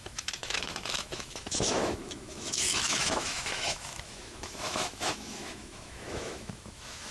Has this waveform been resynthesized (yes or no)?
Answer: yes